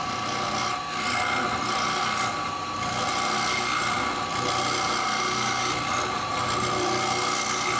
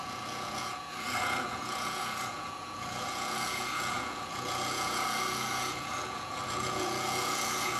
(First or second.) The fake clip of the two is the second